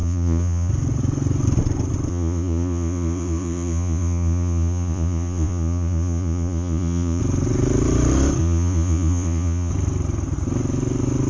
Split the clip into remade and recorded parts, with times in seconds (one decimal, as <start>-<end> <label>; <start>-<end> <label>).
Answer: 0.0-0.7 remade; 0.7-2.1 recorded; 2.1-7.2 remade; 7.2-8.4 recorded; 8.4-9.7 remade; 9.7-11.3 recorded